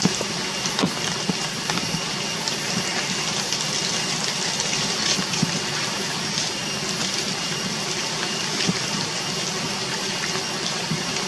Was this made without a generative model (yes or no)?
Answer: yes